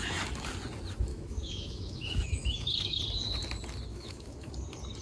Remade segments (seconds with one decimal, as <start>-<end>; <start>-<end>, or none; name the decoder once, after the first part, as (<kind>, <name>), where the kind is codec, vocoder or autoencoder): 1.1-3.0 (autoencoder, DAC-VAE); 3.9-4.5